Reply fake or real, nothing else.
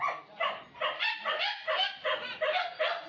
real